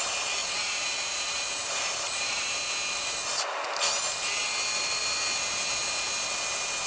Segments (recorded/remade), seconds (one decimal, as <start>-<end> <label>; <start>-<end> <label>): 0.0-0.4 recorded; 0.4-2.6 remade; 2.6-6.9 recorded